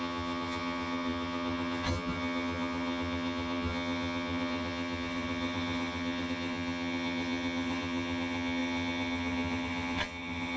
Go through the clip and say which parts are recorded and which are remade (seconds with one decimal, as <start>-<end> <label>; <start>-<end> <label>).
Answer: 0.0-10.6 remade